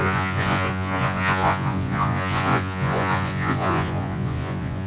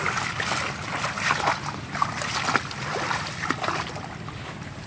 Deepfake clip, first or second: first